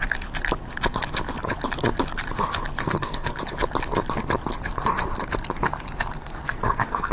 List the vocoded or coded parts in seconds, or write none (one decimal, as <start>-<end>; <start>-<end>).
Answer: 2.8-3.4; 6.2-7.1